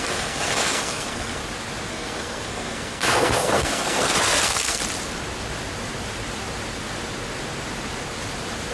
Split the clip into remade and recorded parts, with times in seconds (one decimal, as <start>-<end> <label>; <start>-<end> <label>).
0.0-1.4 remade; 1.4-1.9 recorded; 1.9-4.8 remade; 4.8-8.7 recorded